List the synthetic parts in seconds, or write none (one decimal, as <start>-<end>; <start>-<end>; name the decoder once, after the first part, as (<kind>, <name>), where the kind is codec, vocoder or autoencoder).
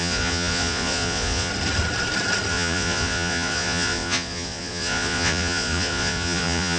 0.0-1.5 (vocoder, Vocos); 2.5-6.8